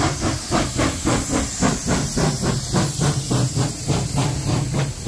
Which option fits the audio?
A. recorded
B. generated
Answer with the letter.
A